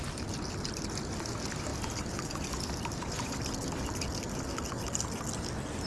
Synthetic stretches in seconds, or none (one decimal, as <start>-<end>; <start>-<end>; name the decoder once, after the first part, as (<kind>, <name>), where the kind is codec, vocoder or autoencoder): none